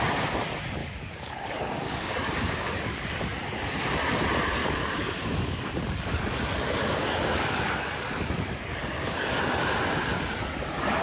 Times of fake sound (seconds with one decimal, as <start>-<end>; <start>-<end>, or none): 0.8-3.2; 4.6-9.4